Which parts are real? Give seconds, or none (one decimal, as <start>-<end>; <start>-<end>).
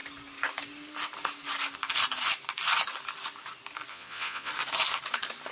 0.0-3.9; 4.5-5.5